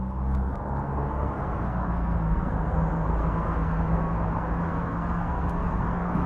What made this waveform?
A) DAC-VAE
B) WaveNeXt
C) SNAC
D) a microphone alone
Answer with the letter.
C